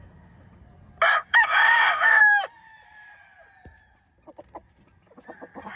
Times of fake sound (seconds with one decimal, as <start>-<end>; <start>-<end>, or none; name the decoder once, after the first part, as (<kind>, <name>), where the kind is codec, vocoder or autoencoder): 1.1-2.2 (codec, DAC)